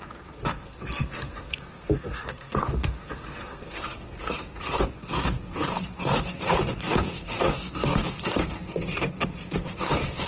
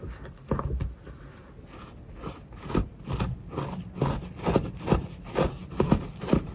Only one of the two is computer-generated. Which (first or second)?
first